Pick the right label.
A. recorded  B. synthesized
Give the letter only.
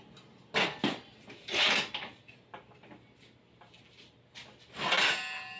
A